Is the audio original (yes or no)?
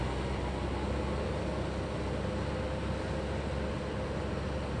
yes